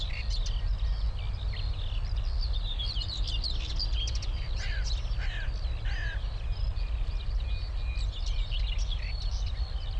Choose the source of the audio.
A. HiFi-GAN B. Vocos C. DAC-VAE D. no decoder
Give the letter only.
D